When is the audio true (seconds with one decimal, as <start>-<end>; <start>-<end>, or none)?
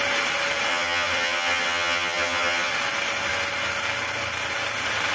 0.0-0.7; 2.7-5.1